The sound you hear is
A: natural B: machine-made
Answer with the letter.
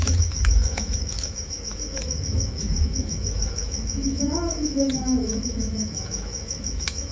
B